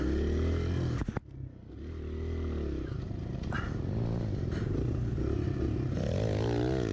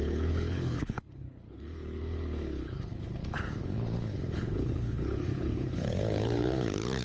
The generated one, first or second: second